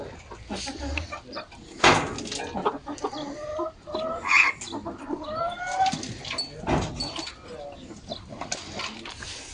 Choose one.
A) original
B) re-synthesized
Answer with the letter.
A